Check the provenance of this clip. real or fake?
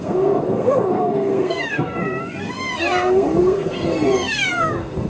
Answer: fake